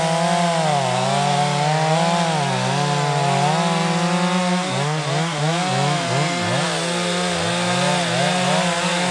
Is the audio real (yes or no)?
yes